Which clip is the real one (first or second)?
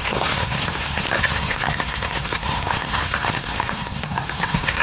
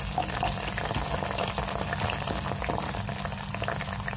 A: second